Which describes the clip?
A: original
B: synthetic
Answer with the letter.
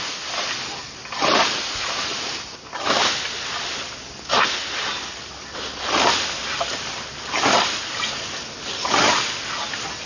A